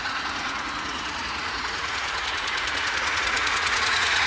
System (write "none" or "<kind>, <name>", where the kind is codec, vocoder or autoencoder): vocoder, Vocos